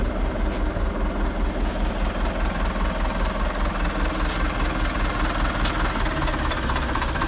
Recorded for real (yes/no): yes